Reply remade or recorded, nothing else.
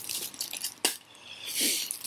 recorded